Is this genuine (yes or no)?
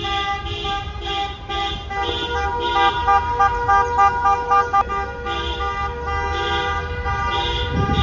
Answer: yes